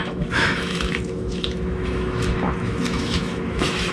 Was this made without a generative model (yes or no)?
no